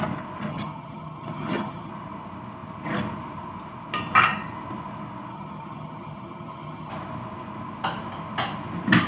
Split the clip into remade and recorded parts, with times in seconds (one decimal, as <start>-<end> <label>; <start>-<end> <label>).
0.0-0.5 recorded; 0.5-1.9 remade; 1.9-5.3 recorded; 5.3-6.9 remade; 6.9-9.1 recorded